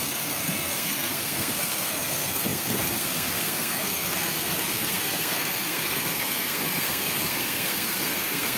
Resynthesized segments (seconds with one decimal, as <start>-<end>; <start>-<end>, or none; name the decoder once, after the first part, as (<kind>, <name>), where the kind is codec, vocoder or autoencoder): 0.0-8.6 (codec, SNAC)